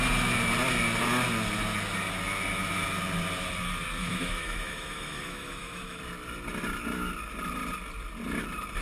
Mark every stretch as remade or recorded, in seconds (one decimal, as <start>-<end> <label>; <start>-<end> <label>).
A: 0.0-4.0 recorded; 4.0-6.0 remade; 6.0-8.8 recorded